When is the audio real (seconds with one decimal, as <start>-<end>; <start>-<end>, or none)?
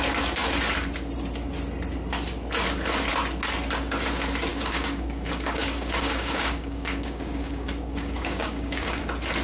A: 0.0-4.5; 9.0-9.4